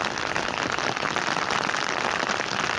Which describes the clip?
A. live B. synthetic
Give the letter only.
B